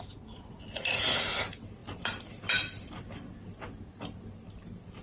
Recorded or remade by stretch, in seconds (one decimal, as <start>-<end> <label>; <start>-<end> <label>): 0.0-5.0 recorded